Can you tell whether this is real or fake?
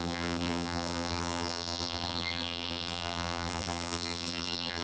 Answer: fake